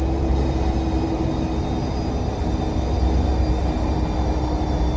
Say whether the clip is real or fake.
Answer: real